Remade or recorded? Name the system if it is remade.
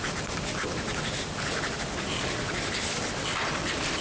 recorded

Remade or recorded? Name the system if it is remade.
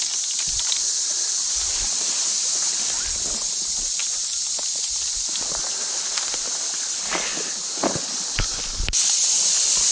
recorded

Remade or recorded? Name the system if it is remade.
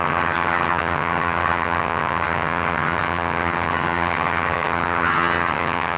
remade, vocoder, HiFi-GAN